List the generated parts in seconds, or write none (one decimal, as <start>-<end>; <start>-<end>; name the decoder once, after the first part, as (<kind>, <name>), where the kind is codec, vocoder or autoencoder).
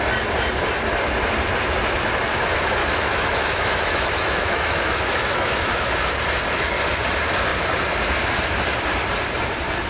2.8-5.9 (autoencoder, DAC-VAE)